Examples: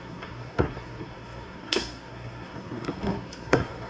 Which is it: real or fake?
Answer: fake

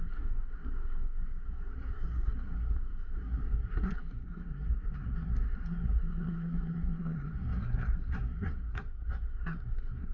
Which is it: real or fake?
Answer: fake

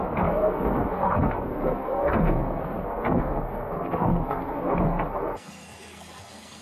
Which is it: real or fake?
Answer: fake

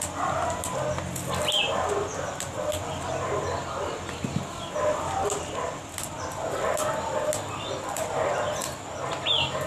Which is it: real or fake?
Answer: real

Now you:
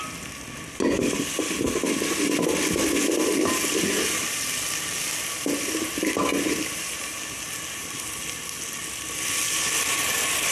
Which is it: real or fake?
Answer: real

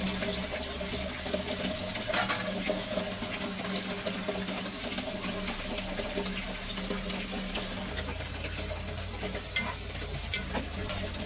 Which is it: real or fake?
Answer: real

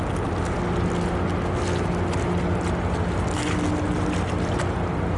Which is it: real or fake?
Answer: real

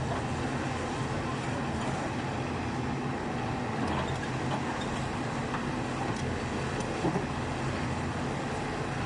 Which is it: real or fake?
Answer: real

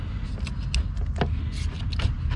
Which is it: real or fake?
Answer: real